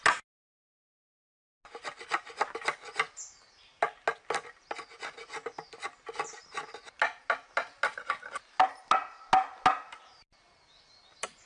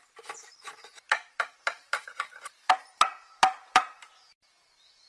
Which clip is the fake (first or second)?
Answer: second